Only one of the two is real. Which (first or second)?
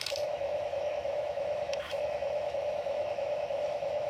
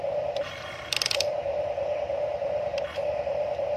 second